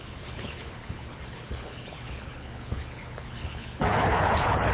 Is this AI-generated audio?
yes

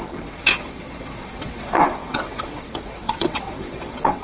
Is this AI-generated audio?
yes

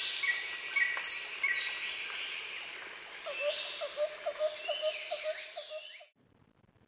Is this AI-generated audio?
no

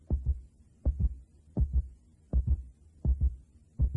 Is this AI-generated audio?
no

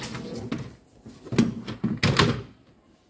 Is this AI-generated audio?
no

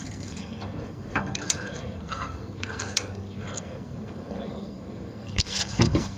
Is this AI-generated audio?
yes